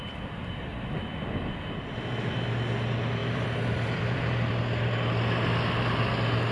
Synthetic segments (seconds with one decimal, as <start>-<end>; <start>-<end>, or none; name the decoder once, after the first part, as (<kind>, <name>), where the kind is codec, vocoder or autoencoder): 0.7-1.4 (vocoder, BigVGAN v2); 3.2-4.5